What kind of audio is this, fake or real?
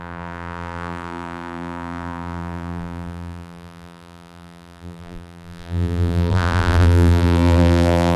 fake